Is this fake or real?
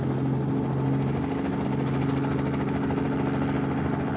real